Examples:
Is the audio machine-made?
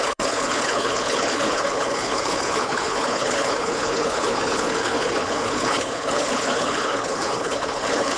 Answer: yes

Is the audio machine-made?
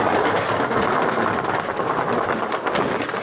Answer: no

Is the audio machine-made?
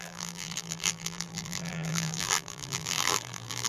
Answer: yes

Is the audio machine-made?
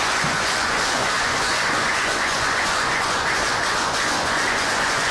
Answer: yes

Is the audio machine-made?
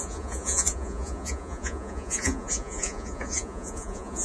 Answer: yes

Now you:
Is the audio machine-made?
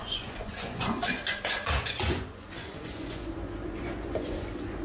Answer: yes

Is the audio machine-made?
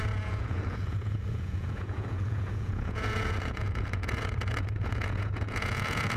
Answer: yes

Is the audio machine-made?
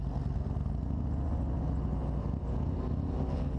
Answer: no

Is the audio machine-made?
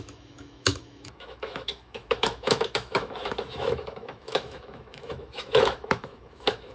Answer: yes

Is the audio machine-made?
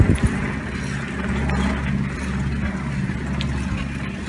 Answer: no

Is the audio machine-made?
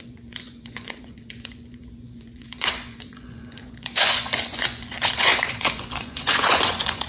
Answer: yes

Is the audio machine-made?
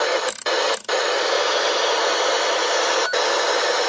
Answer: no